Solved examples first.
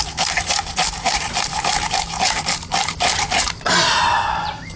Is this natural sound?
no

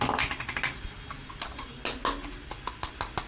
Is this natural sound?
yes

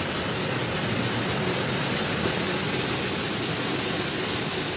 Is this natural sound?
yes